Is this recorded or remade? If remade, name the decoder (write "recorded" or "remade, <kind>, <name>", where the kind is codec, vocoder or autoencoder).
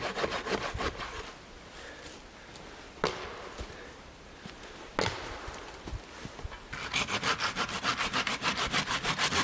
recorded